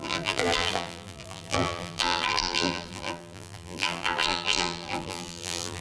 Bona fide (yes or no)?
no